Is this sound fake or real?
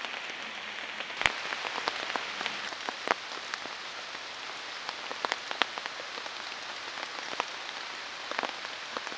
real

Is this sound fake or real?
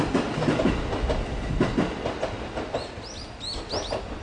real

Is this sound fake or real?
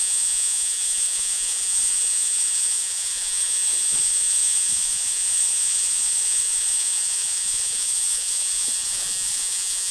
fake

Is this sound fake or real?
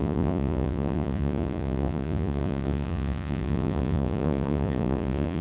fake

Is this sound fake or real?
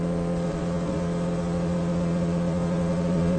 fake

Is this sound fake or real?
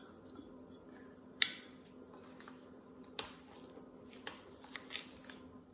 real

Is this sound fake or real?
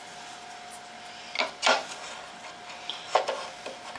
real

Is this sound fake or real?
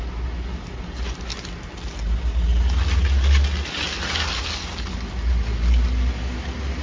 real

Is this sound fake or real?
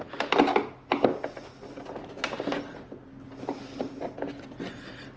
real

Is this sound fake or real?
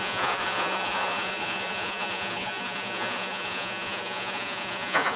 fake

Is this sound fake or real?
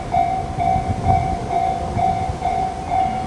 real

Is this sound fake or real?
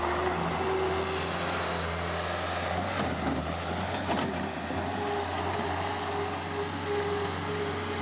real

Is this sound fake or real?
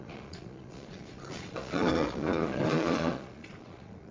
fake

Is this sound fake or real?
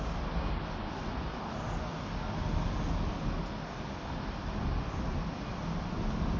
real